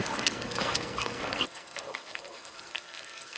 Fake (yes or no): yes